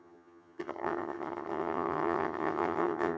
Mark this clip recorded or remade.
remade